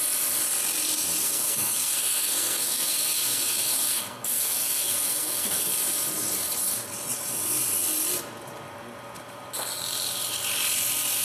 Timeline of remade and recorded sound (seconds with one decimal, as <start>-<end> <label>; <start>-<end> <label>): 0.0-1.2 recorded; 1.2-5.7 remade; 5.7-11.2 recorded